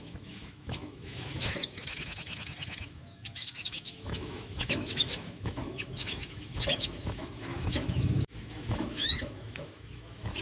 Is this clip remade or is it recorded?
remade